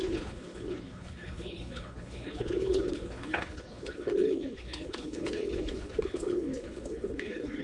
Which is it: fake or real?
fake